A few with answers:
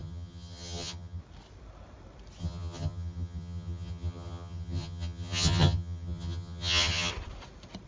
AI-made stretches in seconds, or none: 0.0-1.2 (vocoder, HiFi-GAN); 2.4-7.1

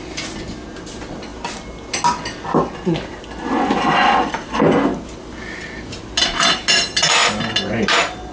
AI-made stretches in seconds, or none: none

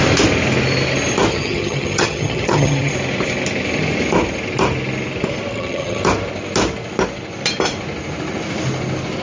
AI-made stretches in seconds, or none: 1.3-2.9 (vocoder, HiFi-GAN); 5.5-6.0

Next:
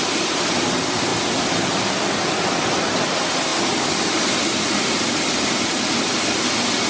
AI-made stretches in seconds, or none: none

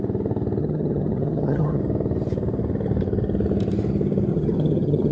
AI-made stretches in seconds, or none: 0.6-1.8 (vocoder, HiFi-GAN); 4.3-5.1

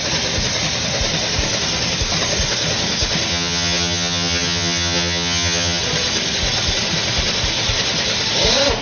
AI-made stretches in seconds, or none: 3.3-5.8 (vocoder, HiFi-GAN)

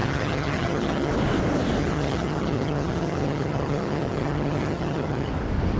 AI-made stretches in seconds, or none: 0.0-1.1 (vocoder, HiFi-GAN); 1.8-5.3

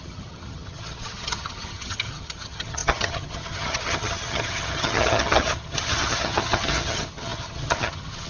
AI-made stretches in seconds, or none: 0.0-8.3 (vocoder, HiFi-GAN)